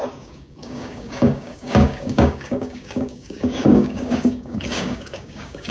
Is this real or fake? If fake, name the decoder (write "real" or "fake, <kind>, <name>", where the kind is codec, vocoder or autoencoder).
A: fake, codec, DAC